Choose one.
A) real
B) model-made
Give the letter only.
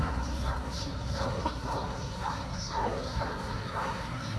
B